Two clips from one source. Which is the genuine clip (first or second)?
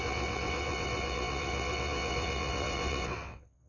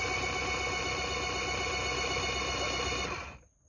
second